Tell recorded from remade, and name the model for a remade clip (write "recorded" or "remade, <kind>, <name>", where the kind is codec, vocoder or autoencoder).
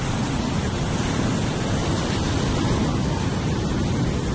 recorded